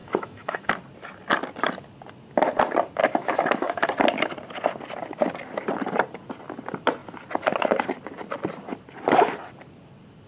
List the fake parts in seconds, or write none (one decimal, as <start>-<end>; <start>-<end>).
0.0-0.7; 3.0-3.9